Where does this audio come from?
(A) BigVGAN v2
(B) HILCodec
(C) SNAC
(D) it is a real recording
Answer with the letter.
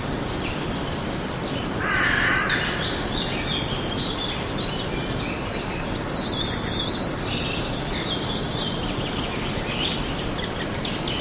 D